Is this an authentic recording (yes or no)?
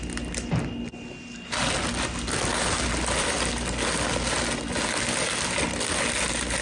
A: yes